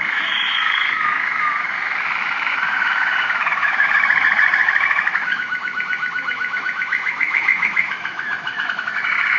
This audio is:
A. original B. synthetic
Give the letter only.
B